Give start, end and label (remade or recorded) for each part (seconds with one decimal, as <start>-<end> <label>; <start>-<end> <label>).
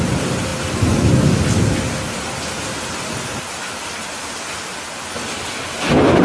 0.0-6.2 recorded